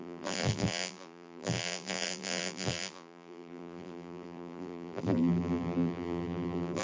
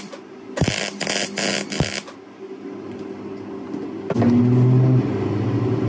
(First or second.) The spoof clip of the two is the first